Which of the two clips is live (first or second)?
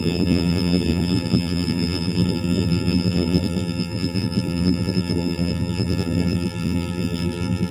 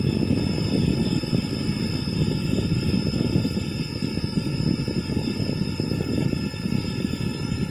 second